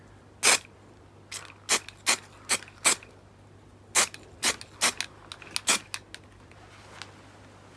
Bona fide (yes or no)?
yes